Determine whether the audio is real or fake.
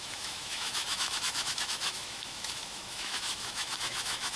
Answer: fake